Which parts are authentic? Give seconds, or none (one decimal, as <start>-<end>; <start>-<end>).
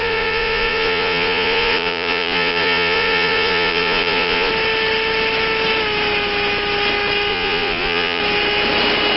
4.5-7.3; 8.2-9.2